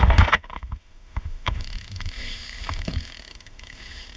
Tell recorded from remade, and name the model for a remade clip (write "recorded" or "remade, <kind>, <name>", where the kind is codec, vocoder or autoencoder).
remade, autoencoder, DAC-VAE